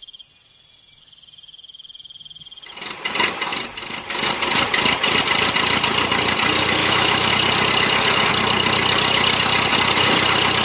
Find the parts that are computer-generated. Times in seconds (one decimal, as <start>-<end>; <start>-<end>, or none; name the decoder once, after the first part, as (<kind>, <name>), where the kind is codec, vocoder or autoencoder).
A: 6.8-7.3 (autoencoder, DAC-VAE)